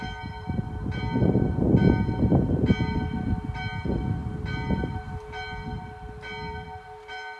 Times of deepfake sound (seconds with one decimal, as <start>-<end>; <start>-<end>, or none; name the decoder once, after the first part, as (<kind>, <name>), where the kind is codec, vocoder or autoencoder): none